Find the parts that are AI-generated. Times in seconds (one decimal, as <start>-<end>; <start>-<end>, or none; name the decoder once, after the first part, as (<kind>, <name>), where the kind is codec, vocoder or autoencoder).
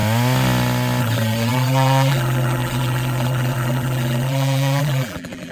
1.0-5.5 (vocoder, BigVGAN v2)